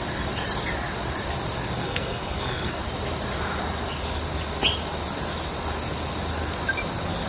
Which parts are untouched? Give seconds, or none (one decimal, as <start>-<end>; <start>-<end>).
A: 0.0-1.8; 2.8-7.3